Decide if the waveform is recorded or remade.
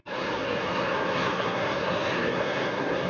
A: remade